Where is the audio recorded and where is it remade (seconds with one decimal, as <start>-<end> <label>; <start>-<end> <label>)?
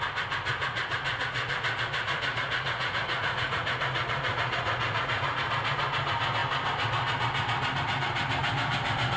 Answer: 0.0-0.5 recorded; 0.5-5.4 remade; 5.4-9.2 recorded